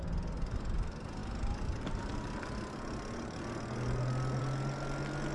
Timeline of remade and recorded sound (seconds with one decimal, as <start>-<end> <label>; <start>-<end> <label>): 0.0-5.3 recorded